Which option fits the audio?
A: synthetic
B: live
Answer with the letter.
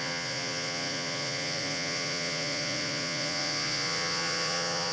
A